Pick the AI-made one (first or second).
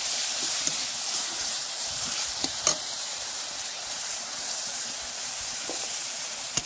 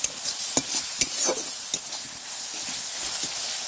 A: first